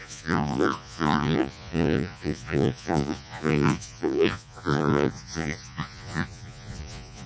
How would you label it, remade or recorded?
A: remade